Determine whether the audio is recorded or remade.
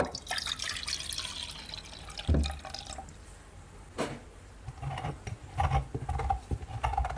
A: recorded